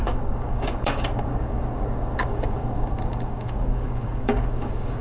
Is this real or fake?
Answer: fake